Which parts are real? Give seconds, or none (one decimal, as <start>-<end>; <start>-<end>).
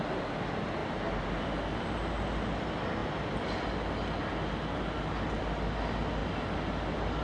0.0-7.2